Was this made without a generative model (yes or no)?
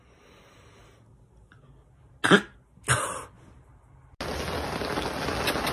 yes